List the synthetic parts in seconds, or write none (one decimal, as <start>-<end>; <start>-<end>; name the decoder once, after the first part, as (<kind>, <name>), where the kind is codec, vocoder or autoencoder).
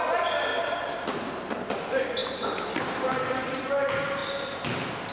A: 0.5-1.3 (vocoder, BigVGAN v2); 2.2-3.7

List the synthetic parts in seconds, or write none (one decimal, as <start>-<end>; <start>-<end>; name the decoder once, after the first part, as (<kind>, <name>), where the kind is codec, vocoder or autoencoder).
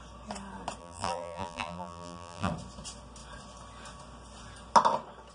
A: 0.8-2.5 (vocoder, BigVGAN v2)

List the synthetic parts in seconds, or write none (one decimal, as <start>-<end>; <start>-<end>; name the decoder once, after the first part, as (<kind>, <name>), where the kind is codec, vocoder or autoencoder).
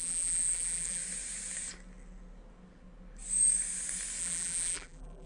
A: 0.0-1.0 (vocoder, BigVGAN v2); 4.2-5.3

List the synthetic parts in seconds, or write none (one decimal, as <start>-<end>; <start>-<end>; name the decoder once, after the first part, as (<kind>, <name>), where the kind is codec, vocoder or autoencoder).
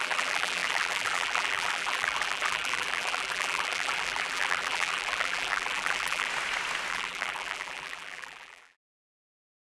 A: 0.0-6.3 (vocoder, BigVGAN v2); 6.9-9.7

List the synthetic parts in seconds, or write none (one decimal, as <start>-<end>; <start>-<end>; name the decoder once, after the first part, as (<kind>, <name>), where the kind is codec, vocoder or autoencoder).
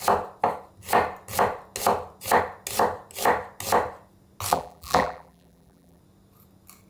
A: 4.5-6.0 (vocoder, BigVGAN v2)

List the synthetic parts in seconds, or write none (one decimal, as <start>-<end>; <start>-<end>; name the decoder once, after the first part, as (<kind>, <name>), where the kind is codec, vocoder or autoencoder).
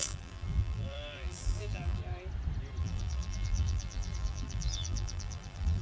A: 0.0-2.0 (vocoder, BigVGAN v2); 2.8-5.8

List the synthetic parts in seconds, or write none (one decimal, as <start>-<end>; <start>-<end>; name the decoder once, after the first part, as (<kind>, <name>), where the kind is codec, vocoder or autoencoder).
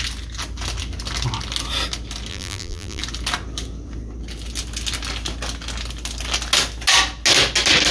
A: 2.3-3.0 (vocoder, BigVGAN v2)